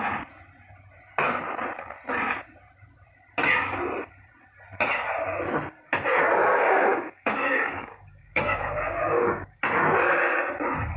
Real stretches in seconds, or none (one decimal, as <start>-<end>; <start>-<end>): 0.0-6.5; 9.6-11.0